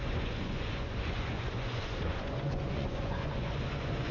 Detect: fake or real fake